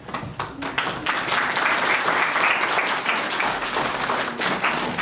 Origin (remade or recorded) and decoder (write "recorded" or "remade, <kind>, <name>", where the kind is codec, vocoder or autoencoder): recorded